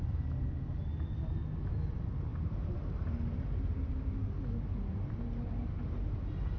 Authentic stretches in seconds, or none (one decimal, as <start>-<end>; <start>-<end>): 0.0-6.6